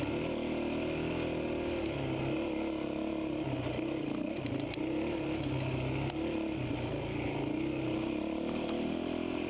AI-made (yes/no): no